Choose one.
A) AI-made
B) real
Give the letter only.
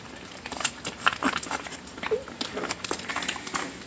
B